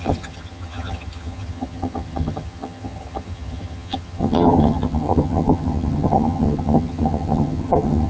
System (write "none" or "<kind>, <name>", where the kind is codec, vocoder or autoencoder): vocoder, HiFi-GAN